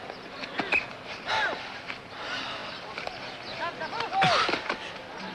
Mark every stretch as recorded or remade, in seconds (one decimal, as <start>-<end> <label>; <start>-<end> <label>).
0.0-5.3 recorded